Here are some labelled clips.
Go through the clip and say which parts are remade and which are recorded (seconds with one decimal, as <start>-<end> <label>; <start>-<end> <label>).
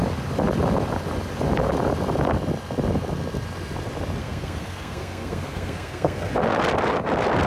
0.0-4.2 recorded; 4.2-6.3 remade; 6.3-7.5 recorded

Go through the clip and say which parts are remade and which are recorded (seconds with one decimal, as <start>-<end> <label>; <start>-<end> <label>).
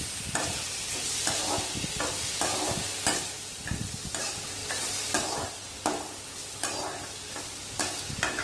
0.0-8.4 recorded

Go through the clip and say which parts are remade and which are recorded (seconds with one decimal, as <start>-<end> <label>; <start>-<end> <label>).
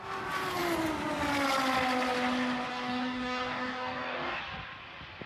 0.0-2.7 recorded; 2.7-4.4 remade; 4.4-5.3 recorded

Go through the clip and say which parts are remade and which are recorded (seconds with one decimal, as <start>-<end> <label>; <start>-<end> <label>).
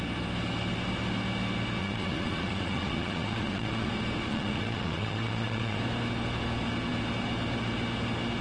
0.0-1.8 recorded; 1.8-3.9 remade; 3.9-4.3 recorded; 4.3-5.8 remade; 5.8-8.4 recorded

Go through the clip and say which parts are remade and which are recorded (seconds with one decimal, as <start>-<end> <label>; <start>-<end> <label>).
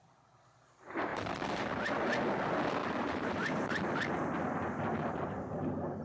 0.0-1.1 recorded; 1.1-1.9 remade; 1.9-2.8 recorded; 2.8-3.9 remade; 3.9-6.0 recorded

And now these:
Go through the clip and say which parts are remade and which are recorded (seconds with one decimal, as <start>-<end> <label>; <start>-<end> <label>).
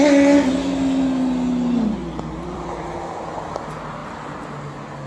0.0-2.0 recorded; 2.0-3.2 remade; 3.2-5.1 recorded